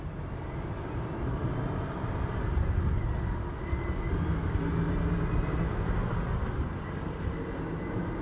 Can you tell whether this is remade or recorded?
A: recorded